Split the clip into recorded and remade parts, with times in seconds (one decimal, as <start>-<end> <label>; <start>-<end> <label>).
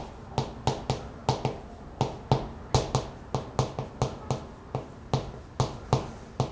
0.0-6.5 recorded